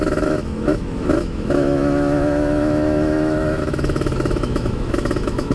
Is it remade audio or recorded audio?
remade